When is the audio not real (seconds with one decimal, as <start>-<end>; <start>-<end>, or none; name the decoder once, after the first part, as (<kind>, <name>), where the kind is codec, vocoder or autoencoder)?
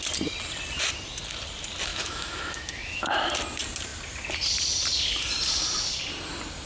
1.9-3.3 (autoencoder, DAC-VAE)